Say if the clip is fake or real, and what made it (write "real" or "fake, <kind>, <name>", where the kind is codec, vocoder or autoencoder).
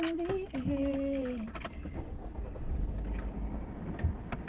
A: real